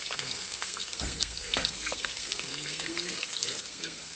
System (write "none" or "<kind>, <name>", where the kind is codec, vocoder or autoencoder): codec, SNAC